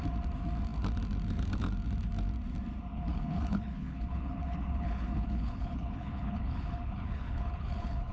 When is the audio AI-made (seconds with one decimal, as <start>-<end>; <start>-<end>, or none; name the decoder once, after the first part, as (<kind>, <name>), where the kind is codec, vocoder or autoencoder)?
2.9-8.1 (codec, HILCodec)

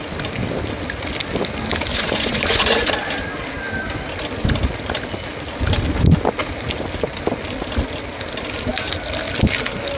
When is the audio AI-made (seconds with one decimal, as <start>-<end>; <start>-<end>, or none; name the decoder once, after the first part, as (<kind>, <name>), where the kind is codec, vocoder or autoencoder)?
1.9-2.9 (vocoder, Vocos)

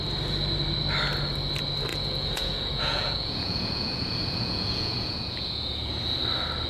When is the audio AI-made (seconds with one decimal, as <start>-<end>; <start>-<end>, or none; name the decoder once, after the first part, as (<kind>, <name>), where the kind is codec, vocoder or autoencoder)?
1.9-5.9 (vocoder, Vocos)